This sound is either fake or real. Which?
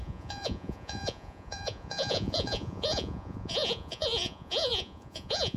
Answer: fake